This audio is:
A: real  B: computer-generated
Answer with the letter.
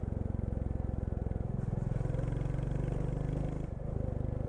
A